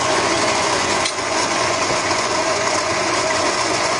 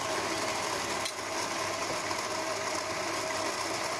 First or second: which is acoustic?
second